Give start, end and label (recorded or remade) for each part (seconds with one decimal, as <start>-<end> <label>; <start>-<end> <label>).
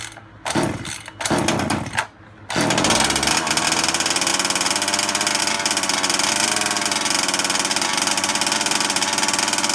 0.0-9.7 recorded